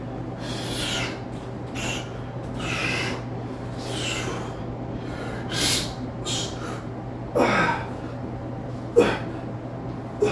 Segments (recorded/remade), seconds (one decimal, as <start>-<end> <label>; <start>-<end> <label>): 0.0-5.1 recorded; 5.1-6.9 remade; 6.9-10.3 recorded